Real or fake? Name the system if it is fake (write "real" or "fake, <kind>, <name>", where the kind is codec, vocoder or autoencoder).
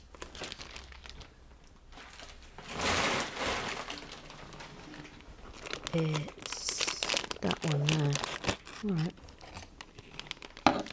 real